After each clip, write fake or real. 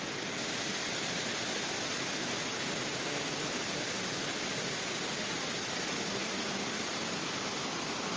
real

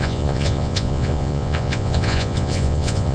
fake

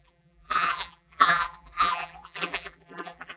fake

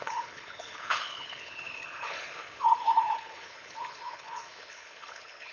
fake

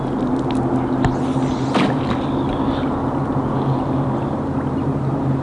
real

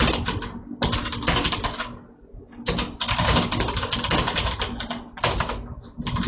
real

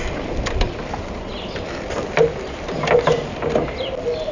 real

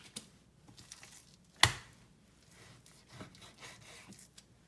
real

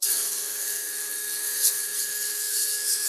fake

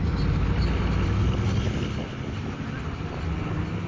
real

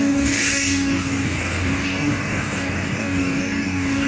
fake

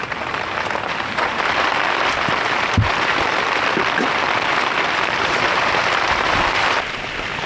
fake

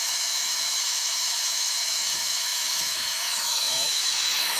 fake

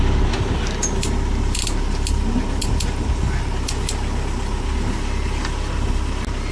real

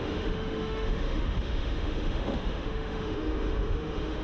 fake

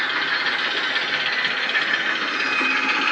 real